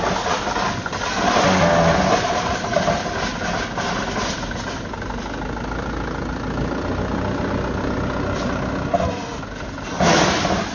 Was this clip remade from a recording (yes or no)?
no